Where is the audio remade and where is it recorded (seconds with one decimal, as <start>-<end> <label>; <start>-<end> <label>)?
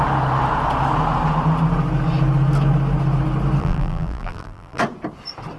0.0-3.6 recorded; 3.6-4.8 remade; 4.8-5.6 recorded